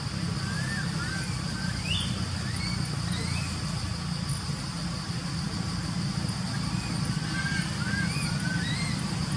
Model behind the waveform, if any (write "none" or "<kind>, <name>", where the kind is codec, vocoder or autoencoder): none